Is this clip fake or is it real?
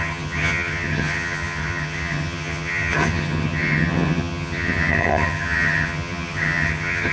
fake